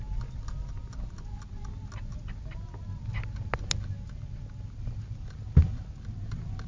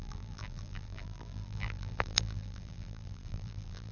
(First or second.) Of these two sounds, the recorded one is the first